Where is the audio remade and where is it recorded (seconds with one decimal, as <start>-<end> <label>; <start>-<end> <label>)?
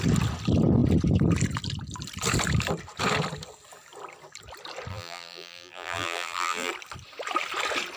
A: 0.0-4.9 recorded; 4.9-6.7 remade; 6.7-8.0 recorded